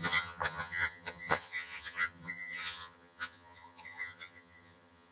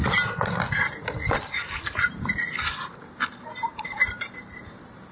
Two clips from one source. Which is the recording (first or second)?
second